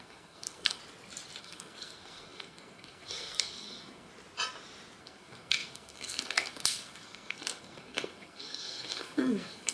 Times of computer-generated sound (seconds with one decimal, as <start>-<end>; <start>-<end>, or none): 0.0-0.8; 1.4-4.1; 5.0-9.7